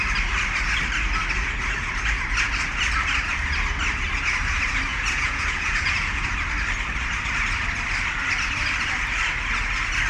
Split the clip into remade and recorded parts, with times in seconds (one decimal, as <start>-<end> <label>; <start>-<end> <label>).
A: 0.0-4.9 recorded; 4.9-6.3 remade; 6.3-10.1 recorded